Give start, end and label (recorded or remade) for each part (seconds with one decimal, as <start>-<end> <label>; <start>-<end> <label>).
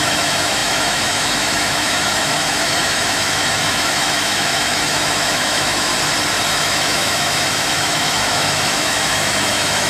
0.0-5.9 remade; 5.9-6.5 recorded; 6.5-9.9 remade